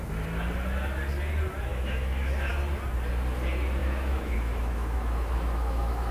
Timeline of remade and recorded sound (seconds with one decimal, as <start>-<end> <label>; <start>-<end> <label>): 0.0-1.7 recorded; 1.7-2.5 remade; 2.5-3.8 recorded; 3.8-6.1 remade